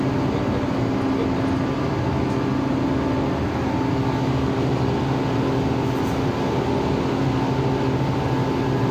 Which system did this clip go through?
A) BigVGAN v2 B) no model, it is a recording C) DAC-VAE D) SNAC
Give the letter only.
B